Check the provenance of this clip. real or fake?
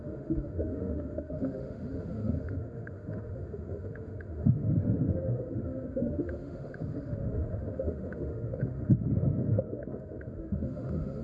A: fake